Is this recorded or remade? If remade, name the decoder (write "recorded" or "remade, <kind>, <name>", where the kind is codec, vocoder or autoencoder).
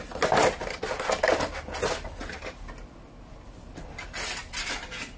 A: recorded